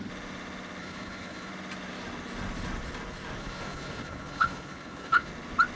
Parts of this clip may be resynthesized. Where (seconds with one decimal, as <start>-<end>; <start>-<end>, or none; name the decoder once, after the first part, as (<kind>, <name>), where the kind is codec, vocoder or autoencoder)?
0.8-1.5 (codec, HILCodec); 3.4-5.3